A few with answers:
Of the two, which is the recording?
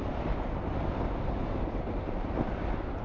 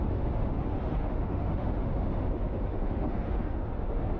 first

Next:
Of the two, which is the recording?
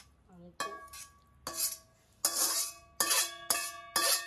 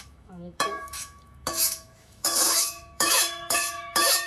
first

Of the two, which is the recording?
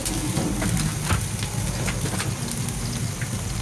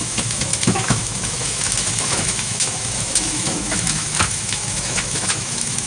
first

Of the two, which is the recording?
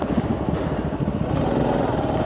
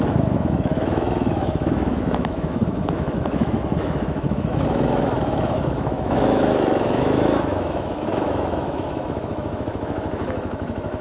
first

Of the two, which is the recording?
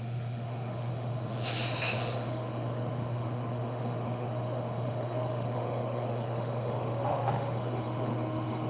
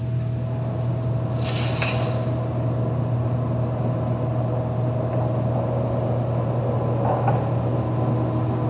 second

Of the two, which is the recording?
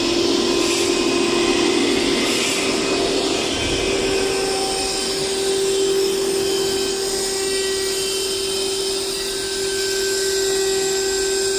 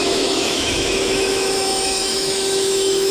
first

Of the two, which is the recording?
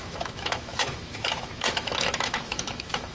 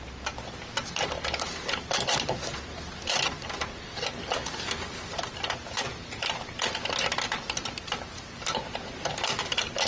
second